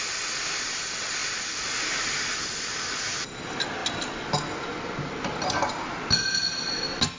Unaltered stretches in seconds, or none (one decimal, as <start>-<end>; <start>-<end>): 0.0-7.2

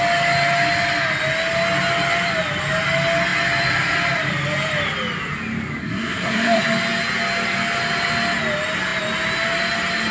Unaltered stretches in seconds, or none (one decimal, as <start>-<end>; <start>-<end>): 0.0-5.8; 6.6-10.1

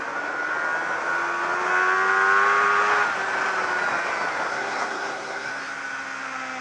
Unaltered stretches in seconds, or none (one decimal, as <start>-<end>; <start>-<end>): 0.0-4.5; 5.5-6.6